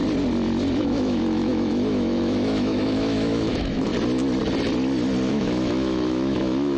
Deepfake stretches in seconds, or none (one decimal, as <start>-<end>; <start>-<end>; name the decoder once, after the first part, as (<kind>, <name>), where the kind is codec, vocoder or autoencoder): 0.8-3.9 (autoencoder, DAC-VAE); 5.3-6.8

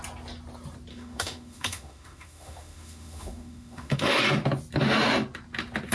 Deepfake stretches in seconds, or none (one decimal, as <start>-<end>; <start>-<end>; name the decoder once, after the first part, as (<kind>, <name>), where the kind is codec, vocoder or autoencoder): 0.9-4.2 (autoencoder, DAC-VAE)

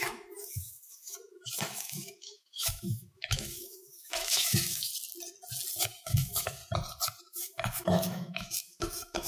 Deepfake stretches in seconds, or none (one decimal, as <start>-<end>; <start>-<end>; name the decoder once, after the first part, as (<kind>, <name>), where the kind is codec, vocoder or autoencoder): 0.0-4.9 (autoencoder, DAC-VAE); 5.8-6.6; 7.2-9.3

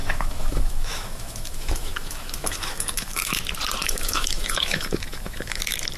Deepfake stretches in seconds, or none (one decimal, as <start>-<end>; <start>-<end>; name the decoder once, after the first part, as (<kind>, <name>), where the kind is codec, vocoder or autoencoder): 0.0-3.4 (autoencoder, DAC-VAE); 3.8-5.6

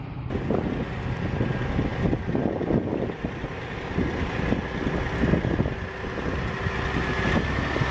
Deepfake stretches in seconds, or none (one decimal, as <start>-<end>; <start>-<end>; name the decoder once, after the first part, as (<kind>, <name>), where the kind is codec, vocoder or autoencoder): none

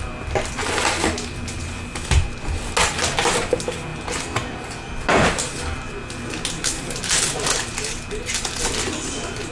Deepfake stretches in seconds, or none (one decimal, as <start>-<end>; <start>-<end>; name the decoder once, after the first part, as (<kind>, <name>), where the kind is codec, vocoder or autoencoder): none

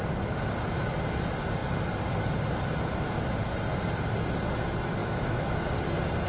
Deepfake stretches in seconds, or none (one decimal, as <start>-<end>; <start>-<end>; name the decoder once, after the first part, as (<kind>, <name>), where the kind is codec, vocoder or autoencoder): 5.0-5.7 (autoencoder, DAC-VAE)

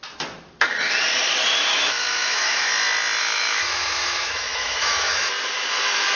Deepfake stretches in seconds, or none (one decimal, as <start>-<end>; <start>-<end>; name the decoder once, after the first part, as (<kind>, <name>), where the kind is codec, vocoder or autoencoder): 1.7-2.7 (autoencoder, DAC-VAE); 3.2-5.3